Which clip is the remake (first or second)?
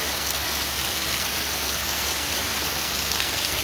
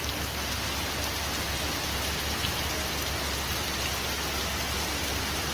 first